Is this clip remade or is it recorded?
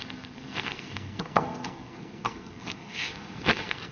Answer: remade